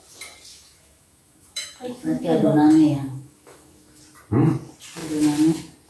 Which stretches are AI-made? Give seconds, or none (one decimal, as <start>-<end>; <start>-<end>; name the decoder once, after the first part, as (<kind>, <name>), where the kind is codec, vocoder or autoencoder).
0.5-4.0 (autoencoder, DAC-VAE)